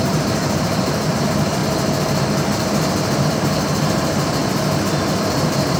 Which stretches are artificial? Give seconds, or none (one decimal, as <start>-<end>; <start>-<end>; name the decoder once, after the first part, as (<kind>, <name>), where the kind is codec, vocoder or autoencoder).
0.0-1.6 (vocoder, BigVGAN v2); 3.2-4.4; 5.3-5.8